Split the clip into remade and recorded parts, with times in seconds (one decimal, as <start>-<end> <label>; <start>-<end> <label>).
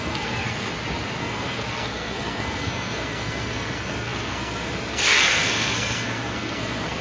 0.0-0.7 remade; 0.7-1.2 recorded; 1.2-7.0 remade